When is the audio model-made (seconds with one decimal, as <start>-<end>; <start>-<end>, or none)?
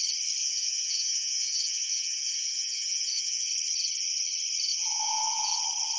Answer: 0.4-3.5; 4.7-5.6